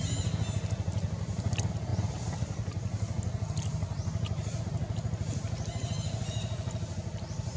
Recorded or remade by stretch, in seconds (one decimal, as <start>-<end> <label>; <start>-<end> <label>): 0.0-7.6 recorded